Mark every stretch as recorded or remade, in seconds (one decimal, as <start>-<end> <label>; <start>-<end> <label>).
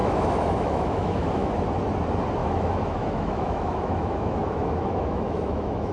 0.0-1.5 remade; 1.5-2.4 recorded; 2.4-5.9 remade